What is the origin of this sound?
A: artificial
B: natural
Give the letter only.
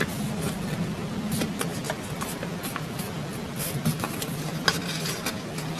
B